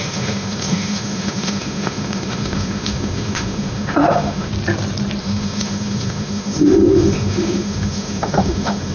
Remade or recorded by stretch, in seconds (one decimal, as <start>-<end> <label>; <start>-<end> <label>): 0.0-4.5 remade; 4.5-5.2 recorded; 5.2-8.9 remade